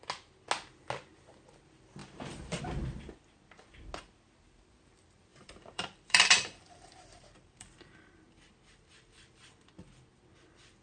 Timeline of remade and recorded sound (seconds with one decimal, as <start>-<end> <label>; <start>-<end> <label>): 0.0-2.0 recorded; 2.0-2.6 remade; 2.6-5.3 recorded; 5.3-8.1 remade; 8.1-10.8 recorded